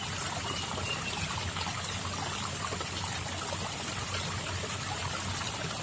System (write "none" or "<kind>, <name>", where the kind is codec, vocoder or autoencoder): none